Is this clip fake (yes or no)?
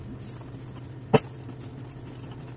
no